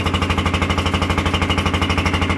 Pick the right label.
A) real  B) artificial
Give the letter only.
A